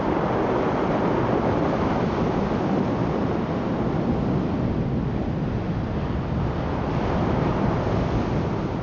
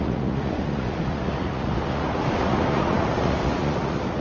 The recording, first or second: first